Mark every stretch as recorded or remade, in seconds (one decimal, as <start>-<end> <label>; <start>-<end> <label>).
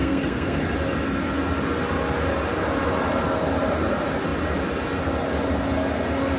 0.0-0.6 remade; 0.6-6.4 recorded